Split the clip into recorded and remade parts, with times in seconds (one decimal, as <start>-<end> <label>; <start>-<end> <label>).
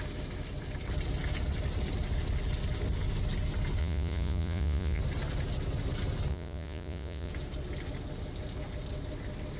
0.0-3.8 recorded; 3.8-5.0 remade; 5.0-6.3 recorded; 6.3-7.3 remade; 7.3-9.6 recorded